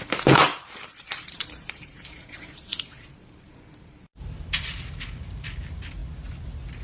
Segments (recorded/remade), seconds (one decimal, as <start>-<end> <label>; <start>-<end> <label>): 0.0-2.7 remade; 2.7-3.3 recorded; 3.3-6.0 remade; 6.0-6.8 recorded